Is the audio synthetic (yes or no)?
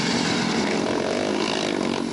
no